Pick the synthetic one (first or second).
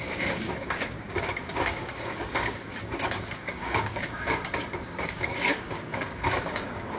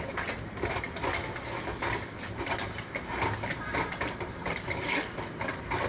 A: first